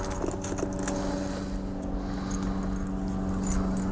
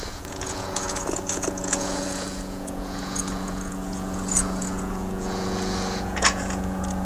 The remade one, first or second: second